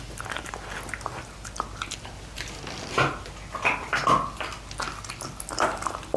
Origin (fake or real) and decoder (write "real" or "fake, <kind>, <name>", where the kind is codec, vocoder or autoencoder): real